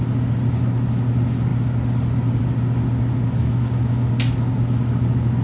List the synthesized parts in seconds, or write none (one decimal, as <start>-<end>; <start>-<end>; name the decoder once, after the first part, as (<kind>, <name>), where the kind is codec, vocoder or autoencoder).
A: 3.4-4.0 (autoencoder, DAC-VAE)